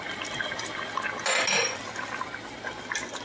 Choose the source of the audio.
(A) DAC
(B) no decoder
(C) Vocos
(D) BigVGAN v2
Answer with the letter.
B